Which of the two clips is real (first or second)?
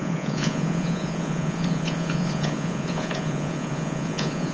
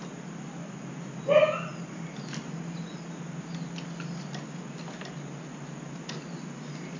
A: second